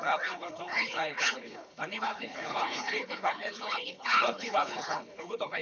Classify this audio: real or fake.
fake